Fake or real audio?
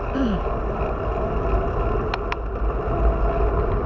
real